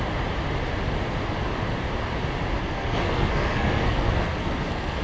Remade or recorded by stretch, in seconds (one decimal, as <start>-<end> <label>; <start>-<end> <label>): 0.0-2.6 recorded; 2.6-5.0 remade